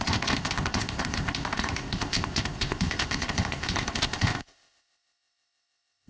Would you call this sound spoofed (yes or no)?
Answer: yes